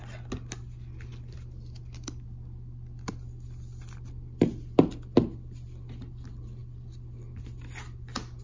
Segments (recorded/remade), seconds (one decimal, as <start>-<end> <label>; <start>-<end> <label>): 0.0-8.4 recorded